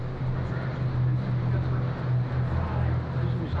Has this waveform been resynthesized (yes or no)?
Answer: no